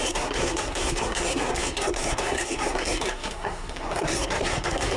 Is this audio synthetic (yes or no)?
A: yes